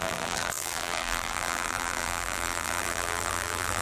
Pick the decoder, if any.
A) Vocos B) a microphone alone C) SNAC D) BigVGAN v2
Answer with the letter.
D